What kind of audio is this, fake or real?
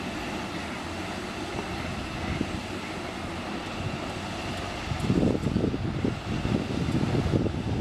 real